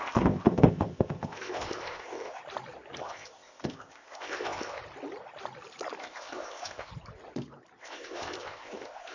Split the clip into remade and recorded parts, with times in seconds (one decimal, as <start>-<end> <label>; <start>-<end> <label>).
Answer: 0.0-2.4 remade; 2.4-3.0 recorded; 3.0-4.8 remade; 4.8-6.0 recorded; 6.0-6.9 remade; 6.9-7.8 recorded; 7.8-9.1 remade